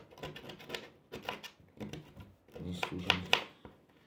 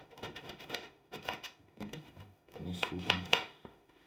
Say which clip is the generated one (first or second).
second